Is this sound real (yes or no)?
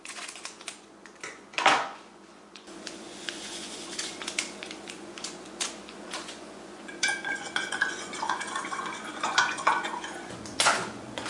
no